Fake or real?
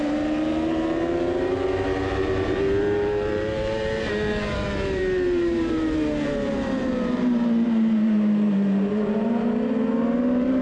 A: fake